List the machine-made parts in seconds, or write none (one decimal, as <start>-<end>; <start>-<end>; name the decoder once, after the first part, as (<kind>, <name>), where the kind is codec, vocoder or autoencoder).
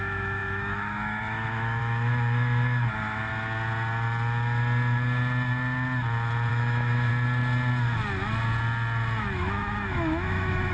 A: 0.0-3.3 (autoencoder, DAC-VAE); 6.5-7.1; 9.2-10.7